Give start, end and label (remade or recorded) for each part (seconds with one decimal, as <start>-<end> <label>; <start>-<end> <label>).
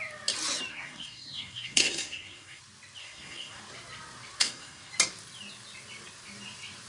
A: 0.0-0.7 recorded; 0.7-2.6 remade; 2.6-3.0 recorded; 3.0-3.6 remade; 3.6-4.4 recorded; 4.4-4.9 remade; 4.9-6.9 recorded